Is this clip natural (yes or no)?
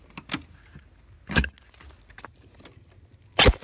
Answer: yes